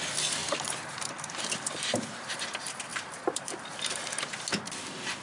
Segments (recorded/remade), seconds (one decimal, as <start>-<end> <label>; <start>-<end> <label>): 0.0-0.4 recorded; 0.4-2.4 remade; 2.4-2.9 recorded; 2.9-4.3 remade; 4.3-5.2 recorded